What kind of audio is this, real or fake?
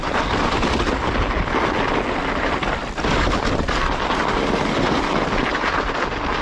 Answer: real